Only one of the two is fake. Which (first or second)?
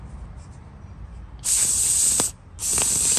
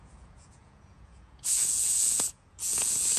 second